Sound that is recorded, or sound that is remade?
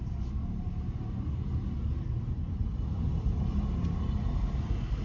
recorded